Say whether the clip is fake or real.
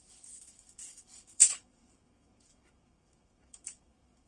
fake